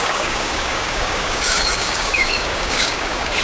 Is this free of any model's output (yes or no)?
no